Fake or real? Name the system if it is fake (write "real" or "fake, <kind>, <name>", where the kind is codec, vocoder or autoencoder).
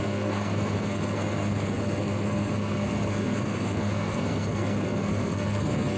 fake, codec, SNAC